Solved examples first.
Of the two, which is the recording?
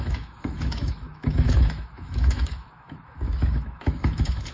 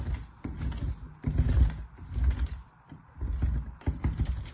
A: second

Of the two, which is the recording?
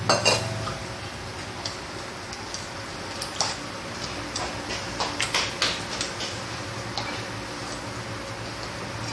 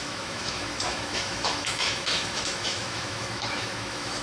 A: first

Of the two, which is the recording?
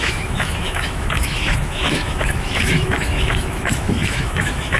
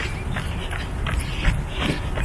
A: second